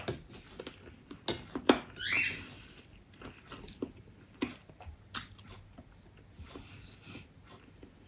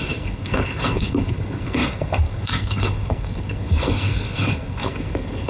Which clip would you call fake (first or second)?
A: second